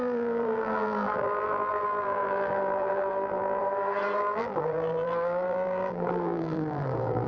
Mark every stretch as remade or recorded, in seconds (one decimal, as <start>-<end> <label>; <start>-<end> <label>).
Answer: 0.0-3.6 remade; 3.6-4.2 recorded; 4.2-7.3 remade